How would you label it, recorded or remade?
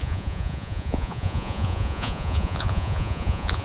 remade